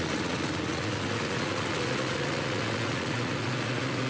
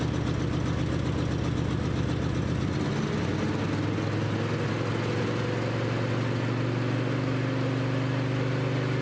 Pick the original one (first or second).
second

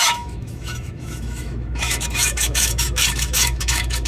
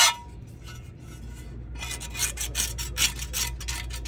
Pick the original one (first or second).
second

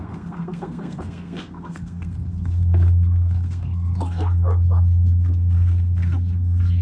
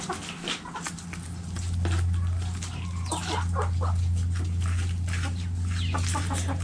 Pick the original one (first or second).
second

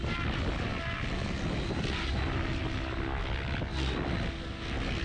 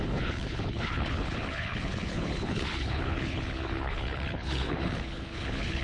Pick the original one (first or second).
first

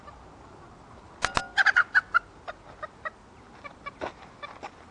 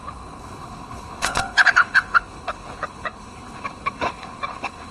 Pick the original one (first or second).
first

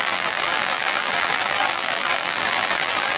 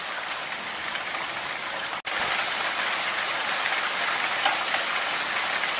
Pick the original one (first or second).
second